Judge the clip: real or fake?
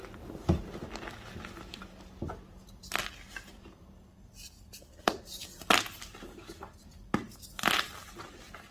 real